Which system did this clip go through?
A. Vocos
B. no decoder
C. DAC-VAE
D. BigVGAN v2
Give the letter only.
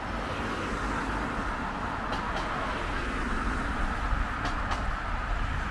B